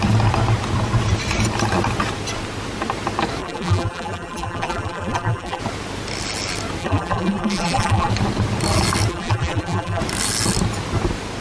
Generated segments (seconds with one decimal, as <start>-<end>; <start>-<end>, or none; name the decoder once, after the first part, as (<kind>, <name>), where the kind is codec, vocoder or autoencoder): 3.4-5.6 (vocoder, BigVGAN v2); 6.8-8.1; 9.1-10.0